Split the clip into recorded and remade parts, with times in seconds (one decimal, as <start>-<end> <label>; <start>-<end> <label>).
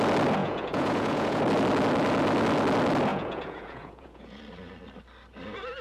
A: 0.0-0.4 recorded; 0.4-1.4 remade; 1.4-3.1 recorded; 3.1-4.4 remade; 4.4-5.8 recorded